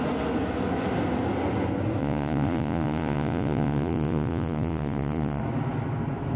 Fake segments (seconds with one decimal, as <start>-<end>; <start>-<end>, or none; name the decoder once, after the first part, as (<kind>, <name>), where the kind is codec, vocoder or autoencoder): 2.0-5.4 (vocoder, Vocos)